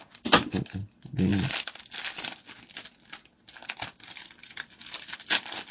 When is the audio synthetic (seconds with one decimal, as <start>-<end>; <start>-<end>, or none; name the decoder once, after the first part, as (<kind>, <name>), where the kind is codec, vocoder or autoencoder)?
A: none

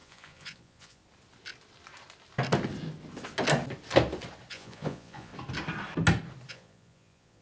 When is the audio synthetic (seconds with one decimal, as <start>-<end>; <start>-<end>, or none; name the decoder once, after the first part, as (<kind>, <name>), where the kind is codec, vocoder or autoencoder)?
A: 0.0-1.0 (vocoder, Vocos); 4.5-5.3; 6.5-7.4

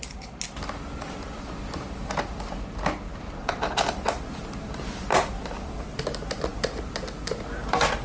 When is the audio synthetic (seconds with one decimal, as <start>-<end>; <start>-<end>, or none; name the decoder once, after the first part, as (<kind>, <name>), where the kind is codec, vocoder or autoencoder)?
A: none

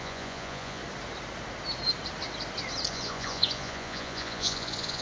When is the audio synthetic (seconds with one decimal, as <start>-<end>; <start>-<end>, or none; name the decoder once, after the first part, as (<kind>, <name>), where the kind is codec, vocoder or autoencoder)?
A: 0.0-0.8 (vocoder, Vocos); 2.9-5.0